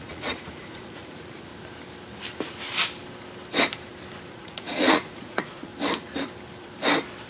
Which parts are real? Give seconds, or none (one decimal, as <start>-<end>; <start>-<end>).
1.5-4.3; 5.7-7.3